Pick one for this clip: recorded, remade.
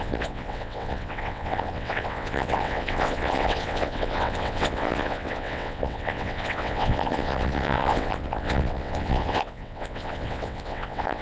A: remade